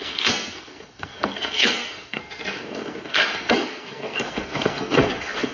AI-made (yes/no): yes